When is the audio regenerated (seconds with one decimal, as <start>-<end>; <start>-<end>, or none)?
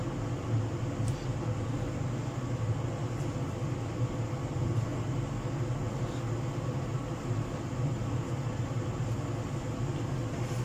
none